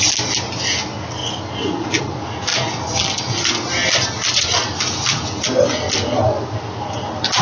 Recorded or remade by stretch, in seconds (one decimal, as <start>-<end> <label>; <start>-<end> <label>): 0.0-7.4 recorded